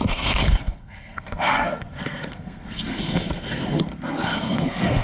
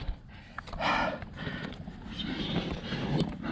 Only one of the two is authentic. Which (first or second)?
second